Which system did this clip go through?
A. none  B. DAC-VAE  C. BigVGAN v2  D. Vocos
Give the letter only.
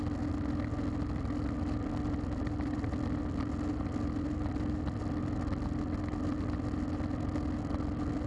A